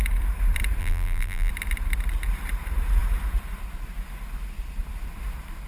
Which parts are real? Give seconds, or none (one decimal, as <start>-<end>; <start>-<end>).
0.0-0.8; 1.5-5.7

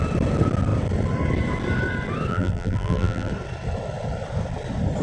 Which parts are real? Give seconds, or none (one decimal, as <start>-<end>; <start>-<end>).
0.0-2.3; 3.3-5.0